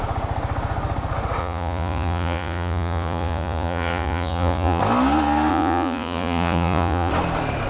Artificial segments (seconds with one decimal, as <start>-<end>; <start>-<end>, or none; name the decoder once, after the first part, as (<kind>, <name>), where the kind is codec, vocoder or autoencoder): 1.4-4.8 (vocoder, Vocos); 5.5-7.1